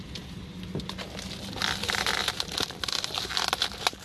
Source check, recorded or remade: recorded